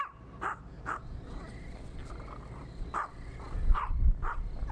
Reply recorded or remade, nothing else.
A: recorded